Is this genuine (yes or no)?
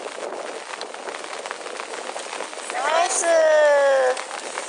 yes